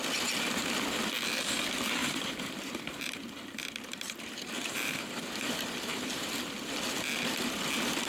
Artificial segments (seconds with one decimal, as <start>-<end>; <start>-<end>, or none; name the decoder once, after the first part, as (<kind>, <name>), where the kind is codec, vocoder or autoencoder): 2.0-5.1 (vocoder, BigVGAN v2); 5.9-6.5